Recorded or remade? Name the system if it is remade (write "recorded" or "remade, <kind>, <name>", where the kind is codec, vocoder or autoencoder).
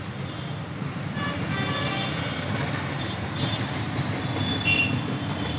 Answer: recorded